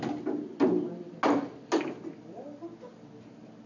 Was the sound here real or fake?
real